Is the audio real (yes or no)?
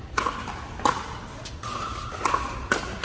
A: yes